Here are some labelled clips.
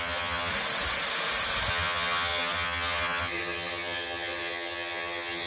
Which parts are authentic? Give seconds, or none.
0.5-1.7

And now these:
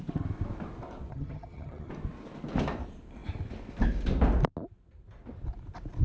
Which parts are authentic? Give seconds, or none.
0.0-1.1; 1.9-6.0